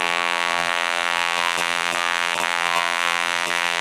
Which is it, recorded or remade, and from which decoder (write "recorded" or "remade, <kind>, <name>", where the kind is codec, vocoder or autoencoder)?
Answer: remade, vocoder, BigVGAN v2